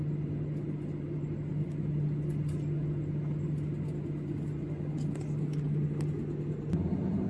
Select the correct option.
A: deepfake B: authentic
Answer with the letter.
B